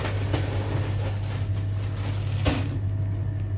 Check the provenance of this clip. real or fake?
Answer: real